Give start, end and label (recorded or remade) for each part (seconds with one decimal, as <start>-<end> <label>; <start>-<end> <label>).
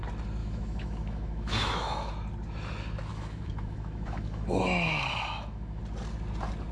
0.0-0.4 recorded; 0.4-2.1 remade; 2.1-3.1 recorded; 3.1-5.8 remade; 5.8-6.7 recorded